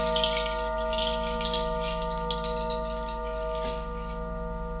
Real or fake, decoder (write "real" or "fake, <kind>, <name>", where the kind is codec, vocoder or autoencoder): real